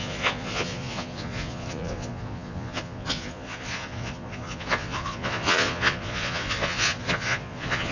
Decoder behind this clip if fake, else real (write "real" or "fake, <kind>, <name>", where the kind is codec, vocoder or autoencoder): fake, vocoder, Vocos